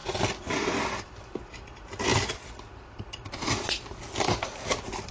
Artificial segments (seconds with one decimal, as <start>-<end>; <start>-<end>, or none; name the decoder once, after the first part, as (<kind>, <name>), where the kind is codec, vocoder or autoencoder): none